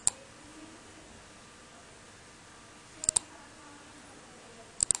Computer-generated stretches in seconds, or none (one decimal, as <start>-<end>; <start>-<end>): none